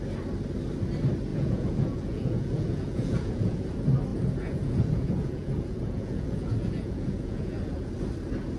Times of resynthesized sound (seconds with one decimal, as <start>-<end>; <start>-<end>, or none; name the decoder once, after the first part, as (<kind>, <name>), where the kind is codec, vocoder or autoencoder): 1.3-3.6 (vocoder, Vocos); 4.1-7.9